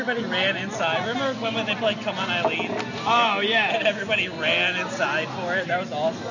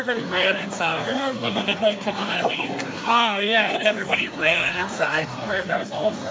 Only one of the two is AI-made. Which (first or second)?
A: second